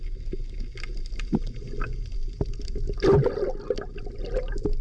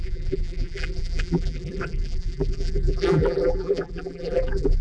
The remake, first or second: second